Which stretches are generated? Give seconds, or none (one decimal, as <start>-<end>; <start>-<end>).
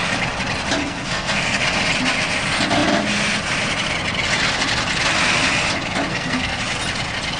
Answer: 0.8-1.6; 6.1-6.6